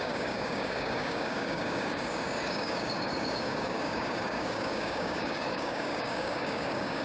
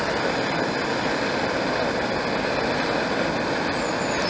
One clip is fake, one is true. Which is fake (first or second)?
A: first